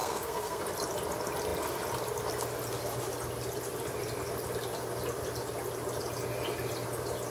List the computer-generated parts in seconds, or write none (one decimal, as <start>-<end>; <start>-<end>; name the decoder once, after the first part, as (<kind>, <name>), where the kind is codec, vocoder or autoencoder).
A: 0.0-0.6 (codec, SNAC)